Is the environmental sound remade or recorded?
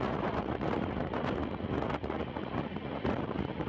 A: remade